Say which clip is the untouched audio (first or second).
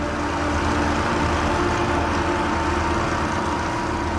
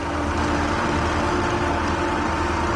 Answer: first